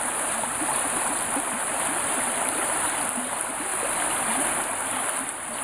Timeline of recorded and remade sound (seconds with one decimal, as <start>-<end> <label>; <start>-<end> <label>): 0.0-5.6 recorded